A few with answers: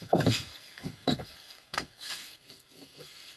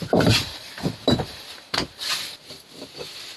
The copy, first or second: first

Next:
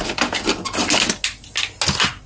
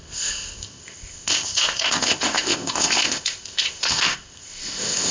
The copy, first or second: second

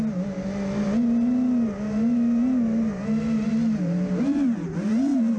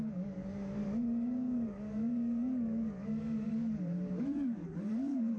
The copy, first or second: second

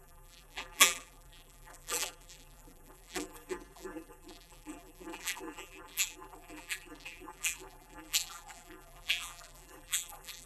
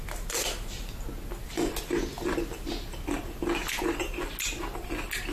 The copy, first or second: first